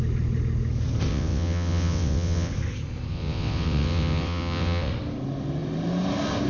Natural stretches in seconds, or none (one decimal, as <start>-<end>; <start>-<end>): 0.0-1.1; 2.5-3.1; 4.9-6.5